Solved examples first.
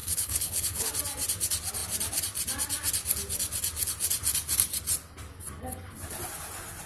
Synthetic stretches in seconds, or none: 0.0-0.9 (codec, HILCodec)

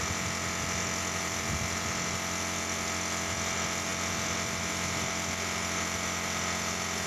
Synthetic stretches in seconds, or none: none

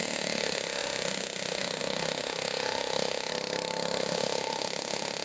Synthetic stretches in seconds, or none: 0.0-3.3 (autoencoder, DAC-VAE); 4.0-5.2

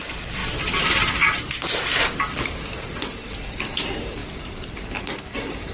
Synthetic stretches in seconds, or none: none

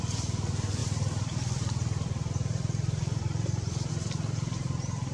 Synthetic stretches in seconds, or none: 0.8-3.9 (vocoder, BigVGAN v2)

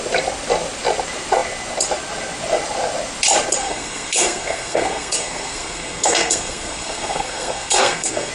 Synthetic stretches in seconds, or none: 3.6-8.3 (codec, SNAC)